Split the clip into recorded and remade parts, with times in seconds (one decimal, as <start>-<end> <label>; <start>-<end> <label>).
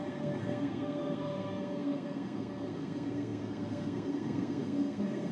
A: 0.0-5.3 remade